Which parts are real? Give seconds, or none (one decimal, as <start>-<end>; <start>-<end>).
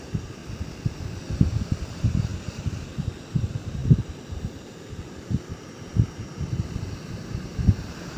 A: 0.4-1.9; 2.3-3.3; 3.8-7.0